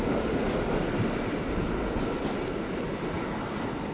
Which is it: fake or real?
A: real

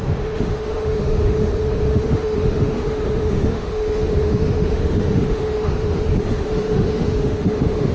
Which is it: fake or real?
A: fake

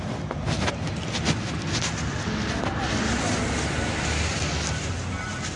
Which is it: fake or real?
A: real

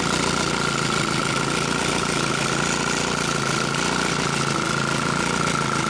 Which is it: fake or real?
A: real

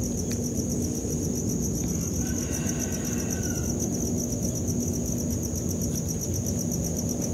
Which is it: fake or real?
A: real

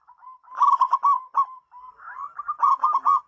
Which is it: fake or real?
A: real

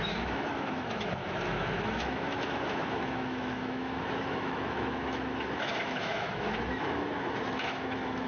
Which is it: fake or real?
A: fake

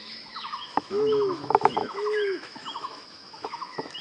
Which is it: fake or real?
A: fake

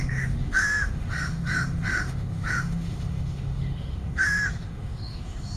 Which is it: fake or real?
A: fake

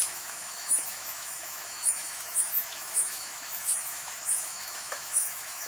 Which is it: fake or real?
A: fake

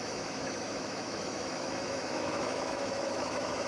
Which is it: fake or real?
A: fake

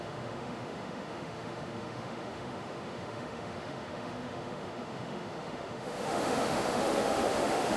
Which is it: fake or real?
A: fake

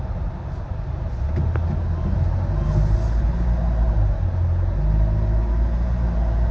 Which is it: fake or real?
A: real